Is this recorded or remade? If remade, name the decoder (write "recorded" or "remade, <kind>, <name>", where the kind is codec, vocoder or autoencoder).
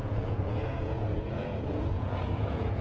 remade, vocoder, Vocos